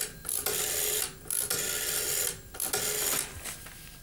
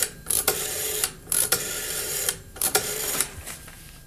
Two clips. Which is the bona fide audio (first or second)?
first